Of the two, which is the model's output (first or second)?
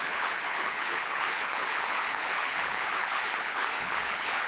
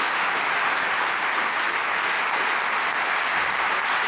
first